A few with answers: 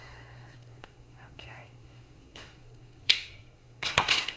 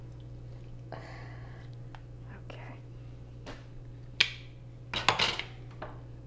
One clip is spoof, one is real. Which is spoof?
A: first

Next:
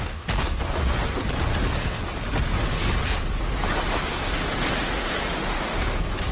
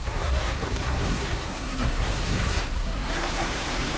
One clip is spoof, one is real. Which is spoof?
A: second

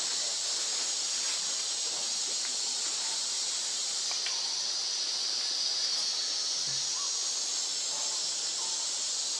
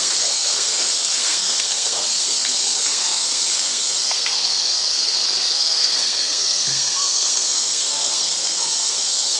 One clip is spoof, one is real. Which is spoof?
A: second